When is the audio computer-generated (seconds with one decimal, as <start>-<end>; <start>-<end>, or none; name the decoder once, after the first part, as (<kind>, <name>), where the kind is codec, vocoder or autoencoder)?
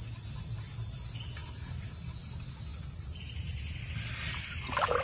none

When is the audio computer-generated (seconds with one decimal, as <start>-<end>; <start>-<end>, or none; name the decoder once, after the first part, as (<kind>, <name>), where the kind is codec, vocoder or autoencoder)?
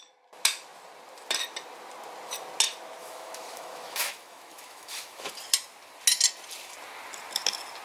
3.0-5.3 (autoencoder, DAC-VAE)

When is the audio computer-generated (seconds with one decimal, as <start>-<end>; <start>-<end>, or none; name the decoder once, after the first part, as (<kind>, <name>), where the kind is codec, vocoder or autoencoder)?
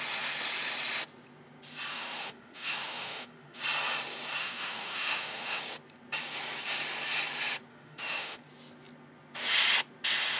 1.9-3.6 (autoencoder, DAC-VAE); 4.4-5.6; 7.7-8.4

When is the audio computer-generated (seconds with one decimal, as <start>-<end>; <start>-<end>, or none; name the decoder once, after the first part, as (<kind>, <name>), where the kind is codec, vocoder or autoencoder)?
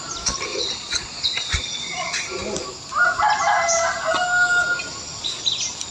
0.5-2.3 (vocoder, Vocos)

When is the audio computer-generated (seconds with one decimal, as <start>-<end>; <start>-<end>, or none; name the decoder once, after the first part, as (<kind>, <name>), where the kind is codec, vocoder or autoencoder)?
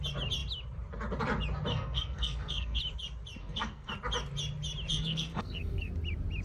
1.7-2.8 (codec, SNAC); 3.4-3.9; 4.9-5.9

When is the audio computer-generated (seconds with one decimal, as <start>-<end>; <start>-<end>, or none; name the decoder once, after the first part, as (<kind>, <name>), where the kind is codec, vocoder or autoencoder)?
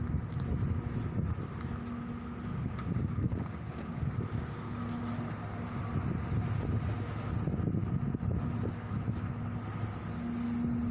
2.5-4.1 (codec, DAC)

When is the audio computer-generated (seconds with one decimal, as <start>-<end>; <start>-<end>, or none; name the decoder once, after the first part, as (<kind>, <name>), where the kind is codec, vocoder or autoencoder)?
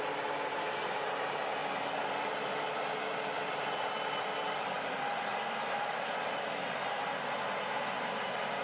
1.6-6.4 (vocoder, BigVGAN v2)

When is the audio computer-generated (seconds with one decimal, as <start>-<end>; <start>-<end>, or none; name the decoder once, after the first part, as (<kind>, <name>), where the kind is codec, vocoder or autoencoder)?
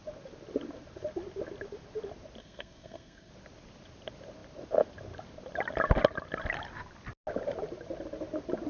2.4-3.3 (codec, SNAC)